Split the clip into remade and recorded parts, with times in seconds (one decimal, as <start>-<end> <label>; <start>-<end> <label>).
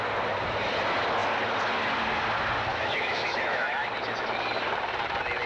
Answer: 0.0-2.7 recorded; 2.7-3.9 remade; 3.9-5.5 recorded